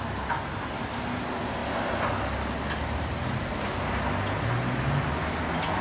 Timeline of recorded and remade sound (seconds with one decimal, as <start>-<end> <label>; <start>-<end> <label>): 0.0-5.8 recorded